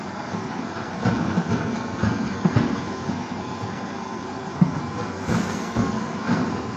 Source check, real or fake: fake